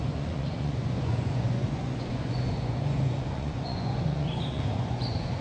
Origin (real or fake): fake